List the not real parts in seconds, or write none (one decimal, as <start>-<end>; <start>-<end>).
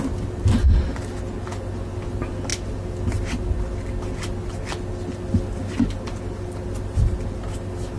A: none